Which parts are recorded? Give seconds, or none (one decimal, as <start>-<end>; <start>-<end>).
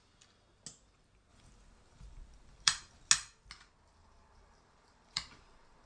0.0-1.3; 3.1-4.0